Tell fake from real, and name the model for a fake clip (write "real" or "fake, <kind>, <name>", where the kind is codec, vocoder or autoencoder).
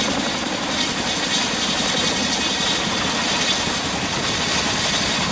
real